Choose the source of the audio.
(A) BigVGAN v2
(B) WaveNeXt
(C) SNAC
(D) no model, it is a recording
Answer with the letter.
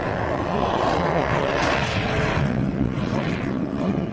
B